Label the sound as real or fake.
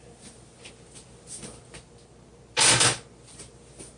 real